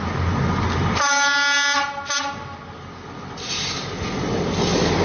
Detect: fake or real real